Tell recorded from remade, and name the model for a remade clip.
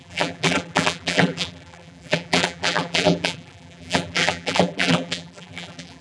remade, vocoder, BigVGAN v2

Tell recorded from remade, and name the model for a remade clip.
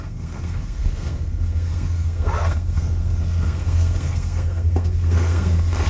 remade, codec, SNAC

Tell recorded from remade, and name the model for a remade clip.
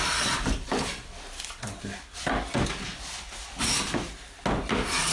recorded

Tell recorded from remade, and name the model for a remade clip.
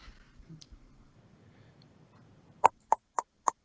remade, vocoder, BigVGAN v2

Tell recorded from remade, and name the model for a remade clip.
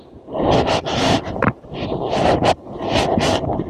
remade, vocoder, BigVGAN v2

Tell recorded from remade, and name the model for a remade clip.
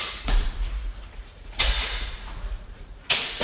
remade, vocoder, Vocos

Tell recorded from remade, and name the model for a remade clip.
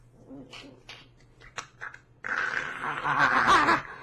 recorded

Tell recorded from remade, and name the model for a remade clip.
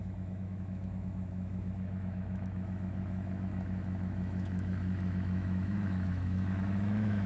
remade, autoencoder, DAC-VAE